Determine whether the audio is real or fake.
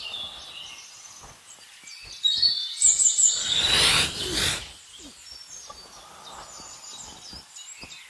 real